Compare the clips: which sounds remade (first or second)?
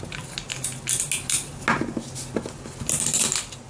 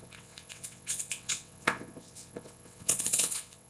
second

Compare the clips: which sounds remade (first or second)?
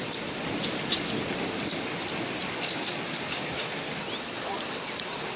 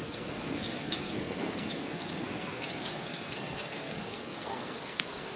second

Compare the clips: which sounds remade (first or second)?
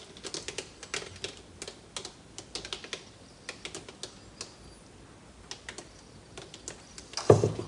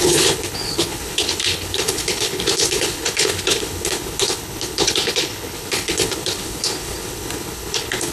second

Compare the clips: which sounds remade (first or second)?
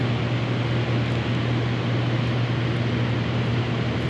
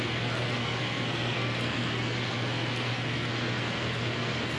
second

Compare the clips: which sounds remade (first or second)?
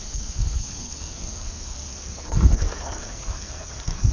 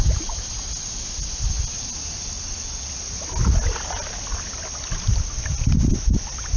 first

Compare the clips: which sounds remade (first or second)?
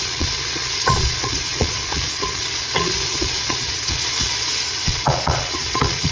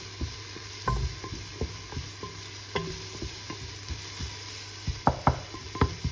first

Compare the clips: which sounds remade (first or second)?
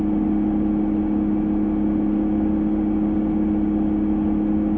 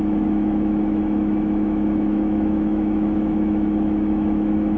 second